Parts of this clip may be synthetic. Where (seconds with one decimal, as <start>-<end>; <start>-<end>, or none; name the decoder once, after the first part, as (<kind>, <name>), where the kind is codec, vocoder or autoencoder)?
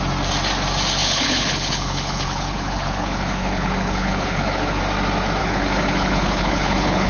1.0-4.8 (codec, HILCodec); 5.4-7.1